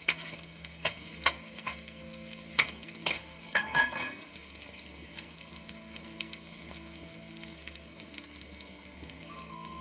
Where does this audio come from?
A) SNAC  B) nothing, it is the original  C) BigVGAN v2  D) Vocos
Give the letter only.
A